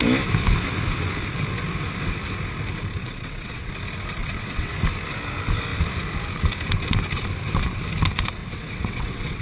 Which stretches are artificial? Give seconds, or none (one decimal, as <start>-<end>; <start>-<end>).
3.0-3.7; 4.2-4.8; 8.4-9.4